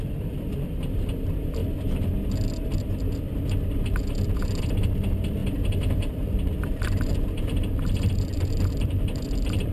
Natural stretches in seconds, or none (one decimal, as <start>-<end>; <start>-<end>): 1.6-4.6; 5.4-6.1